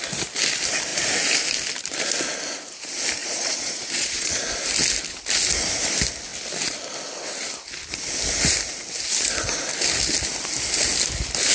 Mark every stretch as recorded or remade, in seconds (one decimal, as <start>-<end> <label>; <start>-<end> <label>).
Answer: 0.0-3.2 recorded; 3.2-4.4 remade; 4.4-11.5 recorded